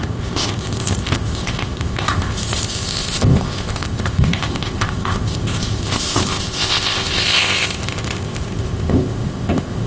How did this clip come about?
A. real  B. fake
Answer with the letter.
B